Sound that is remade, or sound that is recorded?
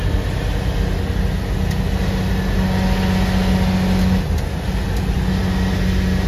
recorded